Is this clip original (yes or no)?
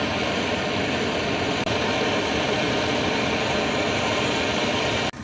yes